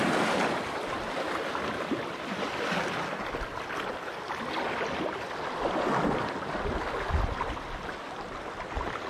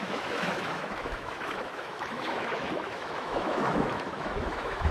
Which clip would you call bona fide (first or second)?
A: first